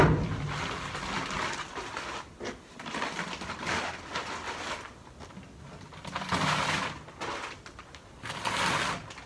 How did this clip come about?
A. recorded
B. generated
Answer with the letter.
A